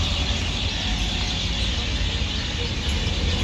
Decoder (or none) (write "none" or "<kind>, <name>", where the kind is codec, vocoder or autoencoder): none